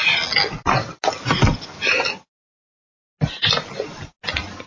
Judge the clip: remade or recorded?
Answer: recorded